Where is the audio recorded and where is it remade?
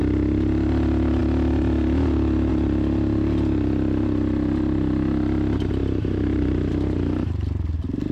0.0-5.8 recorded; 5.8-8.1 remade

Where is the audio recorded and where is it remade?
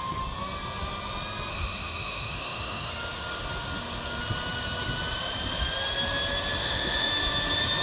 0.0-1.5 recorded; 1.5-2.9 remade; 2.9-6.6 recorded; 6.6-7.1 remade; 7.1-7.8 recorded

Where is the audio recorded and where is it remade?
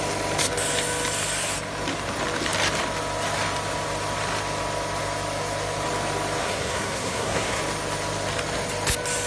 0.0-6.4 recorded; 6.4-7.6 remade; 7.6-9.3 recorded